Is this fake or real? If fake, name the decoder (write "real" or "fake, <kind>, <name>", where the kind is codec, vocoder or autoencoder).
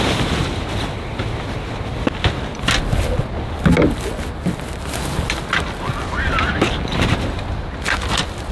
real